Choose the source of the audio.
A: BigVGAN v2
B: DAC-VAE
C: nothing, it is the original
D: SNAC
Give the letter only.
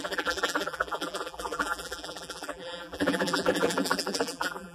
A